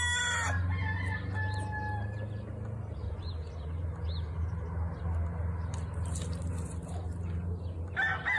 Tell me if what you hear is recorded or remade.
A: recorded